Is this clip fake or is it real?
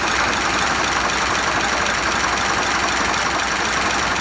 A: real